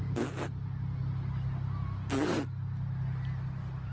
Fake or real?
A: real